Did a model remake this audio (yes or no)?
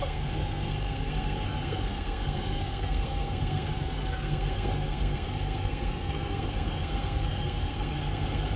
yes